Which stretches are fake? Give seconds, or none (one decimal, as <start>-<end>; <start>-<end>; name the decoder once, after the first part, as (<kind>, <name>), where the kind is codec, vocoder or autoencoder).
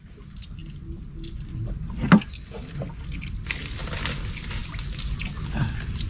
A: none